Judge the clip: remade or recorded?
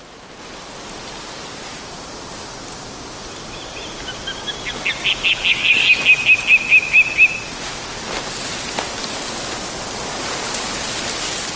recorded